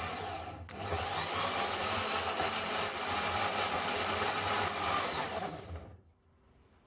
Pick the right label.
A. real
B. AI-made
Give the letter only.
A